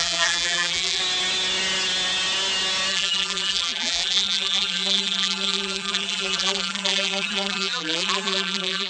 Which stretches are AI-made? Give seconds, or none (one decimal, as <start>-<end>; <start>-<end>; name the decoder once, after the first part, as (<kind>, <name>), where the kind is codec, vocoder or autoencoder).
0.0-1.0 (vocoder, BigVGAN v2); 2.9-8.9